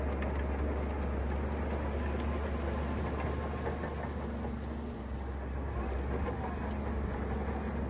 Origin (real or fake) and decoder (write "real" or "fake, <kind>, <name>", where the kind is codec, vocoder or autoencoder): real